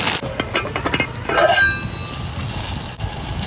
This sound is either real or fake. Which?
real